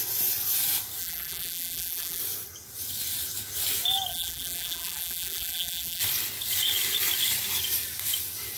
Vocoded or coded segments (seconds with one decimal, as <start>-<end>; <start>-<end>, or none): 1.0-2.2; 4.1-6.0